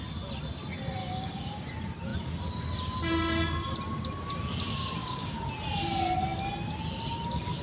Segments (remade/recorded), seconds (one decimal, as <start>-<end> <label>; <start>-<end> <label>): 0.0-1.0 recorded; 1.0-1.7 remade; 1.7-5.0 recorded; 5.0-5.5 remade; 5.5-7.6 recorded